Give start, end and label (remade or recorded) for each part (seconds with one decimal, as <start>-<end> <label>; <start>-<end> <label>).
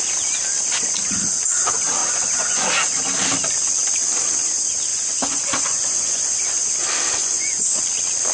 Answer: 0.0-2.0 recorded; 2.0-2.7 remade; 2.7-4.9 recorded; 4.9-6.7 remade; 6.7-7.2 recorded; 7.2-7.8 remade; 7.8-8.3 recorded